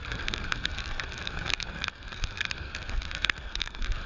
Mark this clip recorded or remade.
remade